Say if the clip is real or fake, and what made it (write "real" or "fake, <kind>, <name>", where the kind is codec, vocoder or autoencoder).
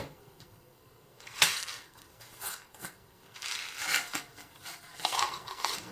fake, codec, SNAC